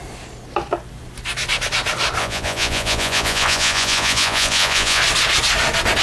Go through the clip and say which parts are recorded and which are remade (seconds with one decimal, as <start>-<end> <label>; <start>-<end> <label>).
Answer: 0.0-2.2 recorded; 2.2-5.0 remade; 5.0-6.0 recorded